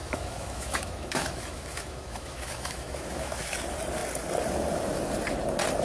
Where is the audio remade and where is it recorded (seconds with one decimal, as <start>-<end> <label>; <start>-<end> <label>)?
0.0-3.5 remade; 3.5-5.8 recorded